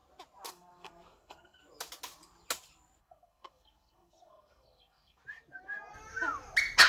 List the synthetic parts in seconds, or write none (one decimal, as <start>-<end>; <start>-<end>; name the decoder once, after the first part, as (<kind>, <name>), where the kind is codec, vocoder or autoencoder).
0.5-1.6 (codec, SNAC); 3.0-5.2